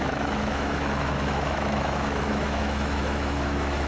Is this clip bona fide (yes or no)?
no